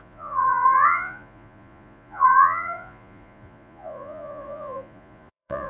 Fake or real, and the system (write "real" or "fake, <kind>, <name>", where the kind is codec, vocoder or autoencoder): fake, vocoder, Vocos